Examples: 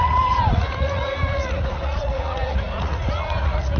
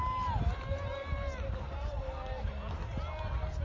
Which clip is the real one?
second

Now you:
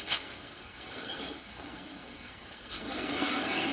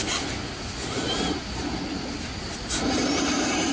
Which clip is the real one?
second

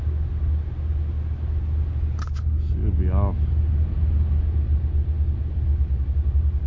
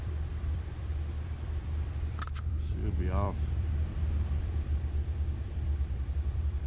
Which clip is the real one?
first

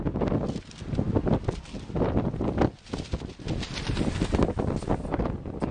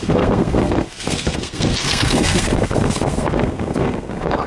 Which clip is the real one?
first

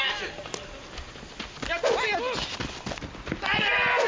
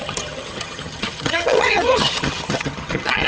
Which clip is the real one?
first